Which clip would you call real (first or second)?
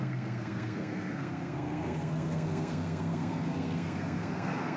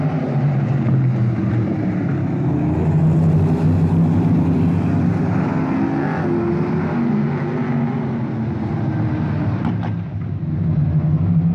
second